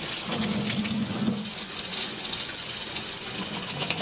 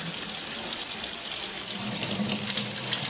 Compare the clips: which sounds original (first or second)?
second